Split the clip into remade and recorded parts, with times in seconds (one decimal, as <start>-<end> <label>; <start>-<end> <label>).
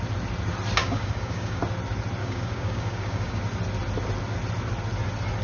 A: 0.0-0.8 recorded; 0.8-1.6 remade; 1.6-2.2 recorded; 2.2-3.4 remade; 3.4-5.4 recorded